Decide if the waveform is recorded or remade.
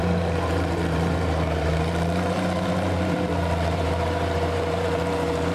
remade